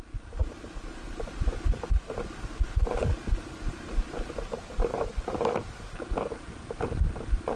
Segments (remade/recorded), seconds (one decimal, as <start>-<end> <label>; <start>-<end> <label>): 0.0-0.4 recorded; 0.4-3.4 remade; 3.4-4.9 recorded; 4.9-6.6 remade; 6.6-7.6 recorded